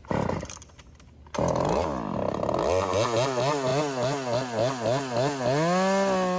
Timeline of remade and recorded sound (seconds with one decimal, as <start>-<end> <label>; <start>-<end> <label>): 0.0-6.4 recorded